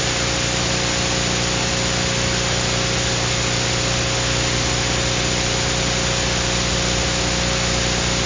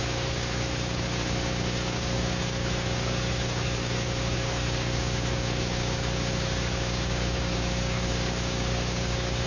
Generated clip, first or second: second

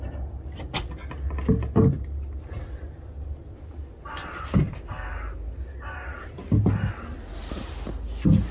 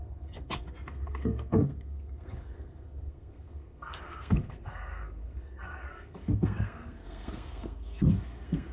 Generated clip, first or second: second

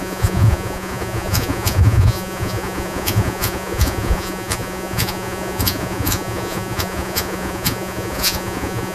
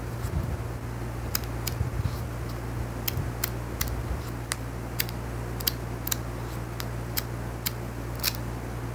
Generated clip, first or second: first